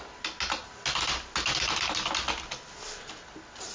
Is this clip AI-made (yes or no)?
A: no